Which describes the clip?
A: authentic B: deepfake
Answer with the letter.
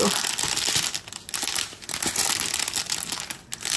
A